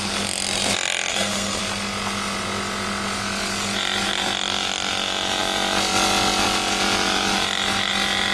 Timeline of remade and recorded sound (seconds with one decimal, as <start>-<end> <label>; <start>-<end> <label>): 0.0-1.1 recorded; 1.1-1.6 remade; 1.6-8.3 recorded